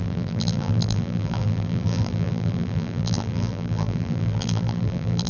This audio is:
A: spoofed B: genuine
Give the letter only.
A